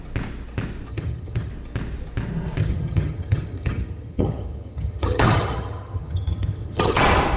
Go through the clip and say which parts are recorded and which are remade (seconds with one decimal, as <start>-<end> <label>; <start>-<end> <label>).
0.0-0.9 recorded; 0.9-1.5 remade; 1.5-2.6 recorded; 2.6-7.0 remade; 7.0-7.4 recorded